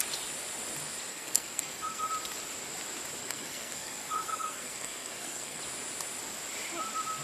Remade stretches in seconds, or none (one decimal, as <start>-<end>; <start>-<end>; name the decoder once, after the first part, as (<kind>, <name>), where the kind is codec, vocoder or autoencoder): 1.1-2.1 (codec, SNAC); 3.2-5.6